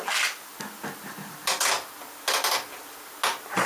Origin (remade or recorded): recorded